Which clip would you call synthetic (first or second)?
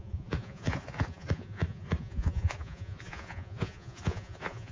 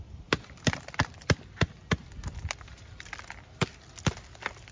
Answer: first